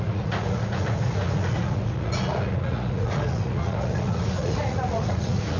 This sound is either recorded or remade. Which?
remade